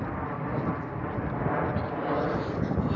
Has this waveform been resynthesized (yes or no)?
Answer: no